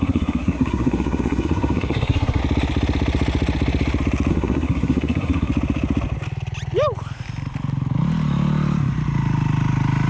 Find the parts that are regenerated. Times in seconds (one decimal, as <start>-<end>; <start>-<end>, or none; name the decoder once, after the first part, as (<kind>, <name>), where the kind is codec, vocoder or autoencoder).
0.0-2.4 (codec, SNAC); 4.3-5.5

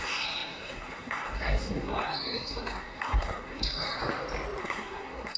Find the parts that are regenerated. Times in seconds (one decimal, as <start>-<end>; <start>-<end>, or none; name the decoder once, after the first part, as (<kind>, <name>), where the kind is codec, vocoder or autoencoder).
0.0-4.0 (codec, SNAC); 4.6-5.4